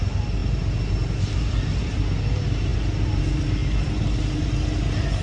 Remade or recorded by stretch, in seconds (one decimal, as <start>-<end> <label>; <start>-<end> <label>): 0.0-5.2 recorded